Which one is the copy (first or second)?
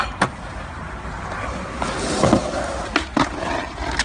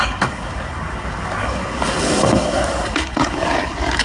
second